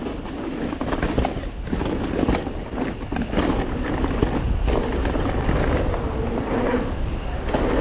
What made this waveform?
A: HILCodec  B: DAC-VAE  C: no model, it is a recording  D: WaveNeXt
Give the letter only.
C